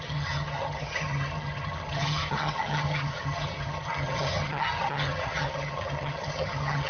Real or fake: fake